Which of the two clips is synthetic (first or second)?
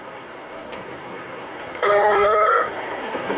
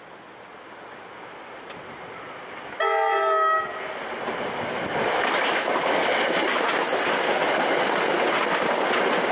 first